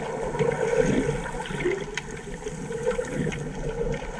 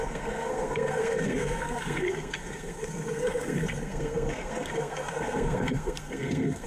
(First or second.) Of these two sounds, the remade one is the second